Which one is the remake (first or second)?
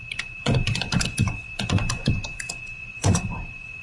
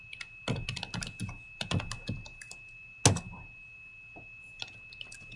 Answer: first